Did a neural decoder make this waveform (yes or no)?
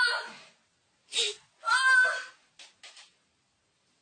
no